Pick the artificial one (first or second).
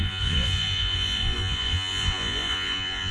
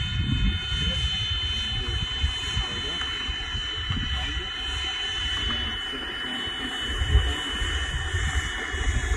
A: first